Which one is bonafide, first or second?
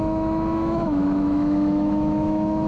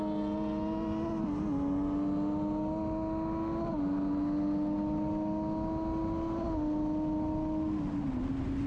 second